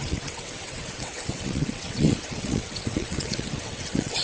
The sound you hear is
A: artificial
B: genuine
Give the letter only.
A